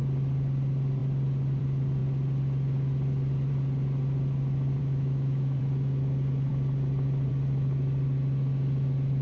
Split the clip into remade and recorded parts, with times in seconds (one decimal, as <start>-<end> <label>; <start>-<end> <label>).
0.0-4.8 recorded; 4.8-5.6 remade; 5.6-9.2 recorded